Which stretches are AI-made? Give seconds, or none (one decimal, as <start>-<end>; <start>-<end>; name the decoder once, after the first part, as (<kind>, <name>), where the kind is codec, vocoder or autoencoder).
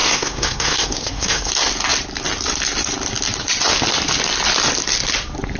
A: 0.0-1.5 (codec, SNAC)